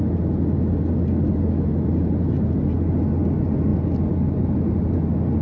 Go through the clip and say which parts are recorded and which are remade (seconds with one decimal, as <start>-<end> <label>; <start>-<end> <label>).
0.0-5.4 recorded